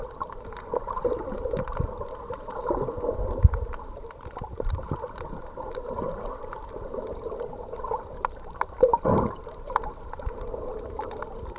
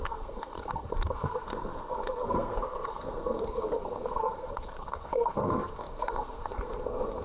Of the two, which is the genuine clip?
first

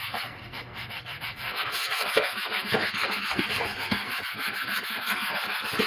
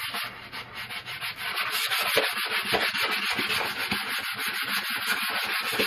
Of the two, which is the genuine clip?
second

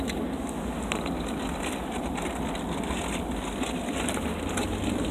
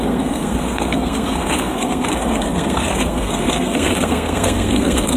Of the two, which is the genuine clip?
first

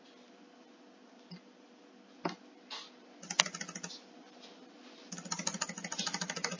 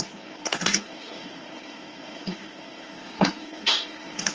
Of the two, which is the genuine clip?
first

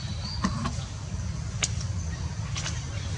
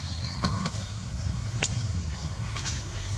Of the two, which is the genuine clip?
first